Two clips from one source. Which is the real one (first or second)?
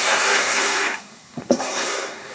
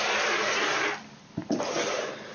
second